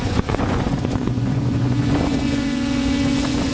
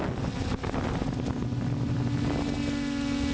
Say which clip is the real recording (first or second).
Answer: second